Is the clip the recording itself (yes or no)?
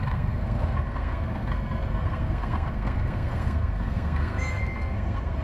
no